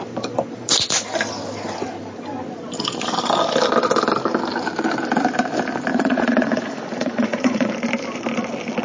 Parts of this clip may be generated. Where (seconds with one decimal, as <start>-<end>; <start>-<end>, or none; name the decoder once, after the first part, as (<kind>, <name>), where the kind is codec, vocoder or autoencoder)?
5.9-7.7 (vocoder, Vocos)